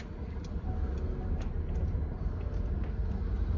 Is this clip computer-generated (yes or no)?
no